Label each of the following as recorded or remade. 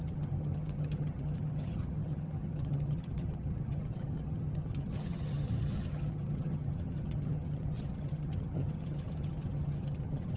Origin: remade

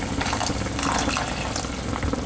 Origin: recorded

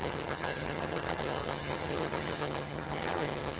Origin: remade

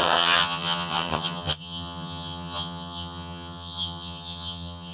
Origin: remade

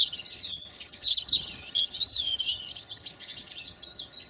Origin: remade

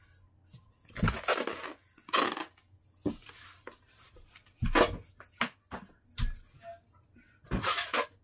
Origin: recorded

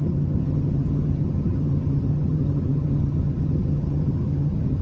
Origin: remade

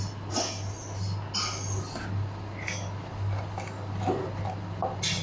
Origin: recorded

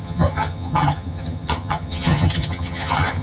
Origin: remade